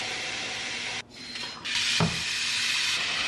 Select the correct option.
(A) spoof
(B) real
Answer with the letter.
B